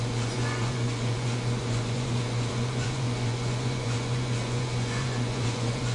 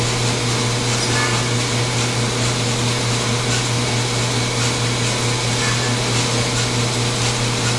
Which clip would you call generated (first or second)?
first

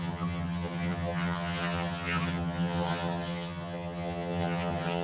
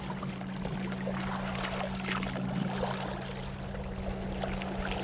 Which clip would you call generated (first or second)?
first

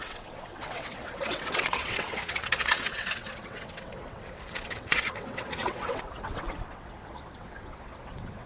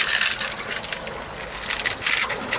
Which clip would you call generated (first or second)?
first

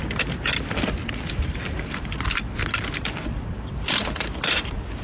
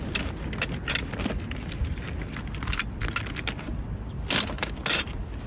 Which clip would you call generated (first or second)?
first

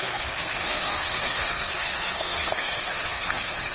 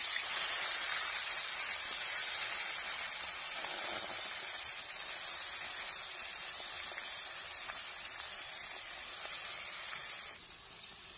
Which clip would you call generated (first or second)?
first